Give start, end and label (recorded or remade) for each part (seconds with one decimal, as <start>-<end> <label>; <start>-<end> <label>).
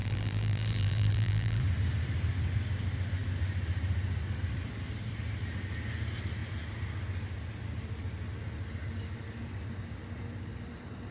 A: 0.0-1.6 remade; 1.6-11.1 recorded